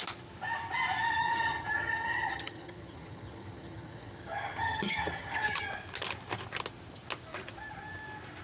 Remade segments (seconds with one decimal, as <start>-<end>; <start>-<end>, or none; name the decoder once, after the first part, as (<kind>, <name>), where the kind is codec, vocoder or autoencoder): 1.2-5.6 (vocoder, HiFi-GAN)